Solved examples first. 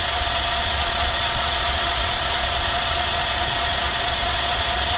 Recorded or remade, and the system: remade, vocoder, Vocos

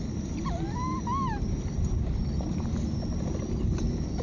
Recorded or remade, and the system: recorded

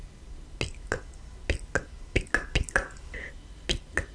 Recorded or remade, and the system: recorded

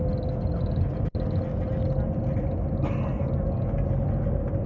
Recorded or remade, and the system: recorded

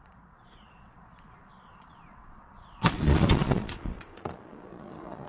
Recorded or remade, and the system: remade, vocoder, Vocos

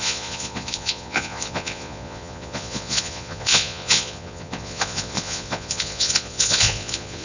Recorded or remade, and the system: remade, vocoder, Vocos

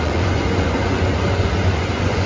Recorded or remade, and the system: remade, vocoder, Vocos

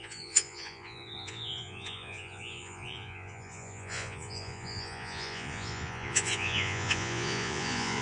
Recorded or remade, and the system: remade, vocoder, Vocos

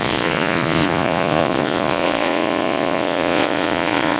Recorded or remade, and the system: remade, vocoder, Vocos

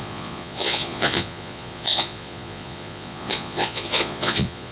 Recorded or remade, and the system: remade, vocoder, Vocos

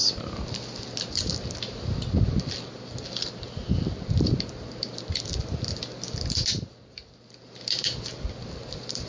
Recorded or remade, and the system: recorded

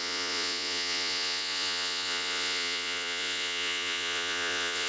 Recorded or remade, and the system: remade, vocoder, Vocos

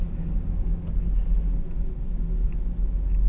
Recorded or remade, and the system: recorded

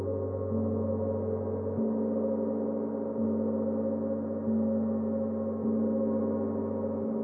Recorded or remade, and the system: recorded